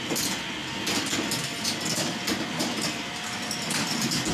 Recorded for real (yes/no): yes